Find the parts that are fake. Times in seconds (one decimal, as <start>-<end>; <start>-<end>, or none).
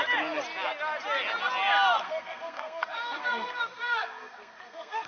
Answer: 1.9-5.1